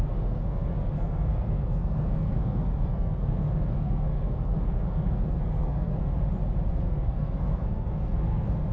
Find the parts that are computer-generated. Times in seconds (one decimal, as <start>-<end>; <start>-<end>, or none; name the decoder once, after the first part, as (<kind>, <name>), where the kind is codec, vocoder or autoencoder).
0.0-6.1 (codec, SNAC); 6.7-8.7